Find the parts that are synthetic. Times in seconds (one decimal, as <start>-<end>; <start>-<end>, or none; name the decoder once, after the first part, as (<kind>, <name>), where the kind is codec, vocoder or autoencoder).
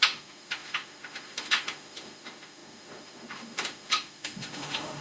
0.0-5.0 (autoencoder, DAC-VAE)